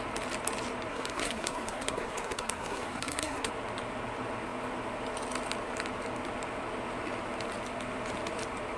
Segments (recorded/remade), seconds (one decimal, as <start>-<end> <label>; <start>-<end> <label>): 0.0-0.9 recorded; 0.9-3.5 remade; 3.5-8.8 recorded